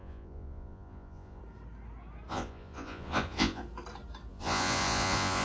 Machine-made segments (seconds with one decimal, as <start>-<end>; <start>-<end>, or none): 0.0-1.4; 2.3-3.6; 4.3-5.4